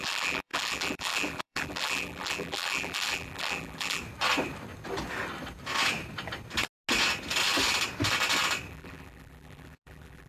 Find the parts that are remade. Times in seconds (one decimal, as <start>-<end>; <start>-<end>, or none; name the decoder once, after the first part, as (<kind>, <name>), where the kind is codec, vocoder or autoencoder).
0.0-4.0 (vocoder, BigVGAN v2); 8.7-10.3